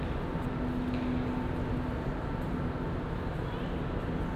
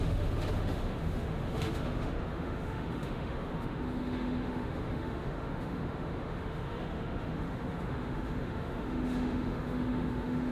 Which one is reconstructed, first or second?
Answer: second